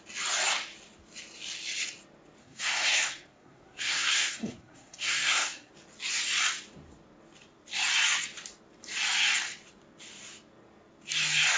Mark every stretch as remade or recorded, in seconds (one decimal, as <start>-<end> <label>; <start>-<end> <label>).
0.0-2.4 recorded; 2.4-5.7 remade; 5.7-11.6 recorded